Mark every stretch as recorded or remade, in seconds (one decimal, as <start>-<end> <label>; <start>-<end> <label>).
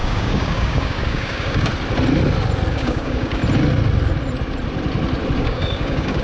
0.0-1.7 remade; 1.7-2.7 recorded; 2.7-3.4 remade; 3.4-5.4 recorded; 5.4-6.2 remade